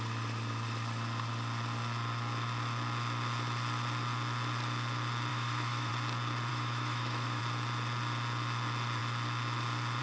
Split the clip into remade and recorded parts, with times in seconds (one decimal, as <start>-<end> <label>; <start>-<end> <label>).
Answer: 0.0-5.3 recorded; 5.3-5.9 remade; 5.9-6.5 recorded; 6.5-7.4 remade; 7.4-10.0 recorded